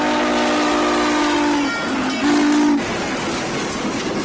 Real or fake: real